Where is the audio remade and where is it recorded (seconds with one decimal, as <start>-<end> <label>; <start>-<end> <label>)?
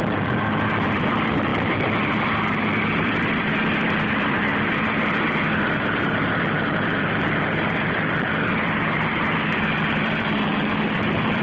0.0-11.4 remade